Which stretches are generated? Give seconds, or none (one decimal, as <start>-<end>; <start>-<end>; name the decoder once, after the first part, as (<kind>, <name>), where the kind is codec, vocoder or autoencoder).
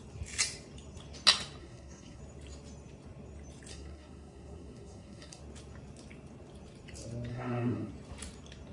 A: 1.6-2.2 (codec, SNAC); 3.7-5.4; 7.3-7.9